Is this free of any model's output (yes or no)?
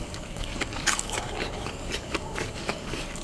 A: no